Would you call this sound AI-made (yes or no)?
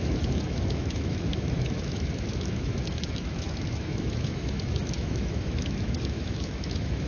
yes